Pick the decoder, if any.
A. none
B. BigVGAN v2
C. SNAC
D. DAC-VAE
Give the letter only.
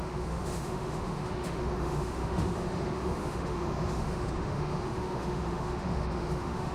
D